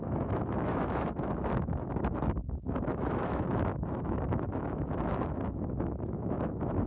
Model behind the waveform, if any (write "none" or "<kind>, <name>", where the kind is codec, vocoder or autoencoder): autoencoder, DAC-VAE